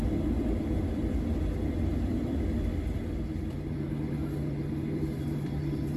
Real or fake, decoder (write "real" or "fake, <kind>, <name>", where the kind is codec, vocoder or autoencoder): fake, vocoder, BigVGAN v2